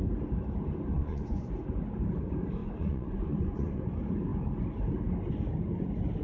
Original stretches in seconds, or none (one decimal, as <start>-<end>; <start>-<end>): 0.0-0.9; 1.5-2.6; 3.8-6.2